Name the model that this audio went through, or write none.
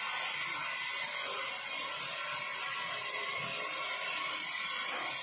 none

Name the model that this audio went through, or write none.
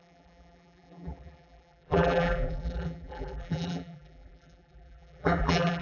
vocoder, BigVGAN v2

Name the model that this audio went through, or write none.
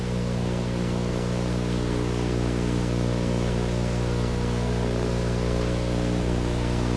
codec, SNAC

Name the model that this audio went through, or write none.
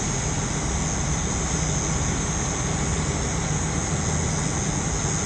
none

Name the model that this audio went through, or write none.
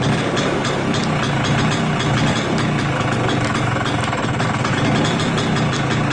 none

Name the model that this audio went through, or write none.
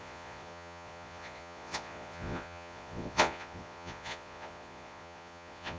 vocoder, Vocos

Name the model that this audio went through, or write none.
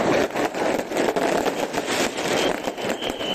none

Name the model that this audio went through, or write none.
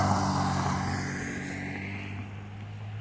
none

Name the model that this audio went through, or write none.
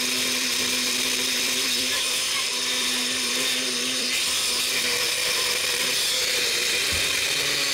vocoder, BigVGAN v2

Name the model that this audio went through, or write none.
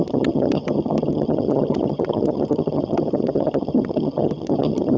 vocoder, HiFi-GAN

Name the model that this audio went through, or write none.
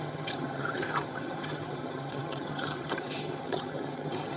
vocoder, HiFi-GAN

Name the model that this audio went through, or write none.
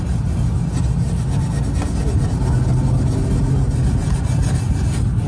none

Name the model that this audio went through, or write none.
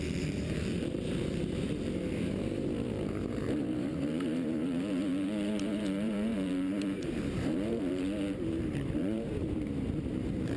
vocoder, BigVGAN v2